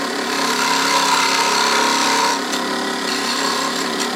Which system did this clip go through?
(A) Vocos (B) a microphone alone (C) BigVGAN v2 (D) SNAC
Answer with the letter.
C